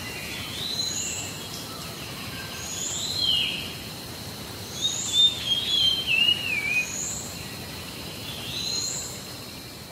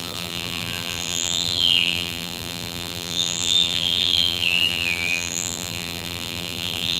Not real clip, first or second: second